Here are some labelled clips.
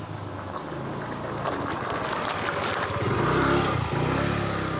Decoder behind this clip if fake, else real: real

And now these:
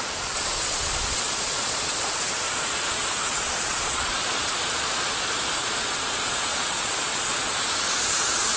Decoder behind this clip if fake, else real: fake, vocoder, Vocos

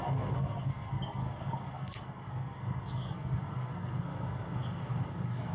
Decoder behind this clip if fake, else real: fake, codec, SNAC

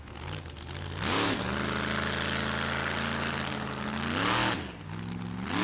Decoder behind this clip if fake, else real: real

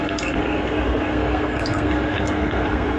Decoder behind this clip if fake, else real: fake, codec, SNAC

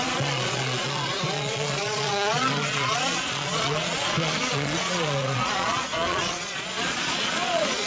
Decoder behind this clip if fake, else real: fake, vocoder, Vocos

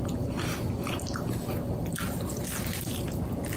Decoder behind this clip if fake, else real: real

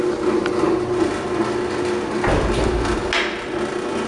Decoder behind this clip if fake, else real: real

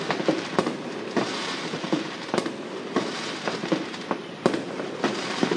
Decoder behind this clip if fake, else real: fake, vocoder, BigVGAN v2